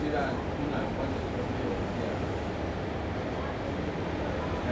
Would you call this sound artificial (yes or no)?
no